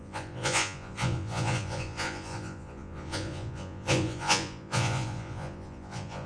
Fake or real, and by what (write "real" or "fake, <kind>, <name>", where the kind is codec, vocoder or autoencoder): fake, vocoder, Vocos